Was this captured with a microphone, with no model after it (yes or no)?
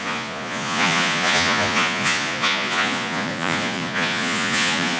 no